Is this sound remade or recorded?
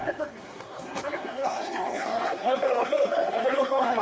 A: remade